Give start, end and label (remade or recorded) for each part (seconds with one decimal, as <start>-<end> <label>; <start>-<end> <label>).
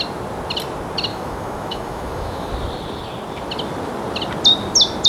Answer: 0.0-1.1 recorded; 1.1-2.5 remade; 2.5-5.1 recorded